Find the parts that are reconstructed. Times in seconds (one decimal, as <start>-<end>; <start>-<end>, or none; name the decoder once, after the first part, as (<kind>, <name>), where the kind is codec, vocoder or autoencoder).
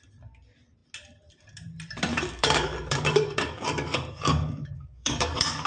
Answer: 2.1-5.7 (codec, DAC)